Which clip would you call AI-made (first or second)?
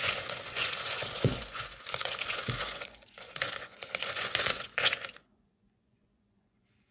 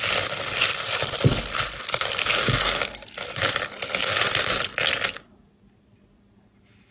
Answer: first